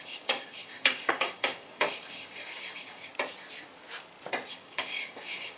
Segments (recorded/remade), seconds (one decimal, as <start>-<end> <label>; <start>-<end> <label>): 0.0-3.1 remade; 3.1-4.5 recorded; 4.5-5.6 remade